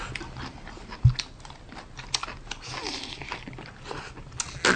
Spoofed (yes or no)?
no